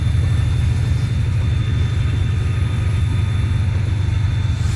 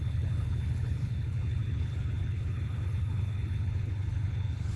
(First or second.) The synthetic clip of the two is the second